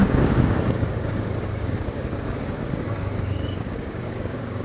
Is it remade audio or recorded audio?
remade